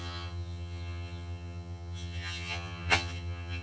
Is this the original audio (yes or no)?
no